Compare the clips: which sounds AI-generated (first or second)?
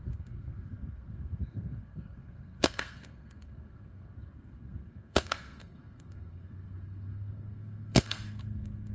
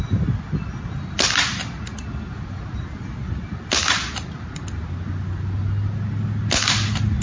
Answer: first